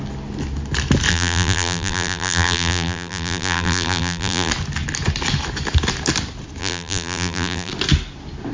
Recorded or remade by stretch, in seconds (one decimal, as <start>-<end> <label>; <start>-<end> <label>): 0.0-1.1 recorded; 1.1-4.5 remade; 4.5-6.6 recorded; 6.6-7.7 remade; 7.7-8.5 recorded